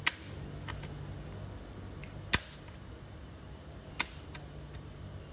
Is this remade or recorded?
recorded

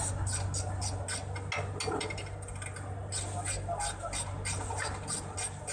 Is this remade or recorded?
recorded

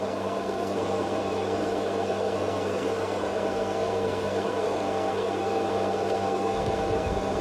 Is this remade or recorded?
remade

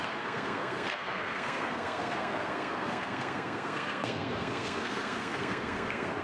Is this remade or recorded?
remade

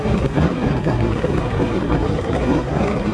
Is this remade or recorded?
remade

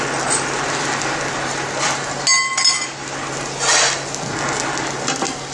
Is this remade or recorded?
recorded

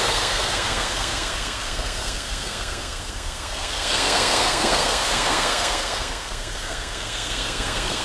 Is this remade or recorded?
remade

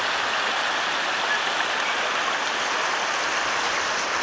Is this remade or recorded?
recorded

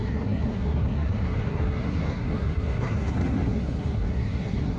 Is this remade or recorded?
remade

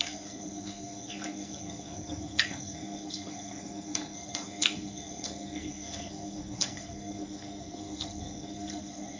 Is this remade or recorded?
remade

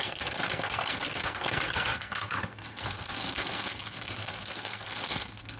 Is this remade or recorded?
remade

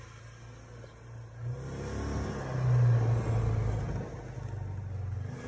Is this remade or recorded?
recorded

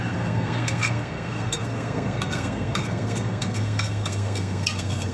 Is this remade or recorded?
remade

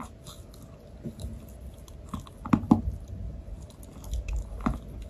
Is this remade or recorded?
recorded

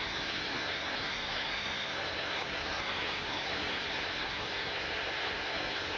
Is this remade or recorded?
remade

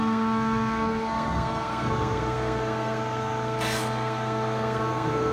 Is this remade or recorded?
remade